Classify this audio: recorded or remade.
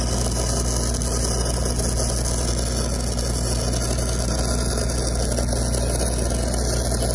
recorded